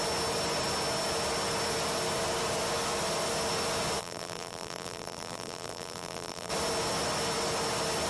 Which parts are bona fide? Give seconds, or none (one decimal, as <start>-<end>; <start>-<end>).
0.0-4.0; 6.5-8.1